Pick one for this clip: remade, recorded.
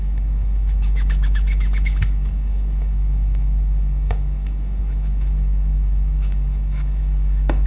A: remade